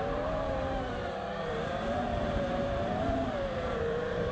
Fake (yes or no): yes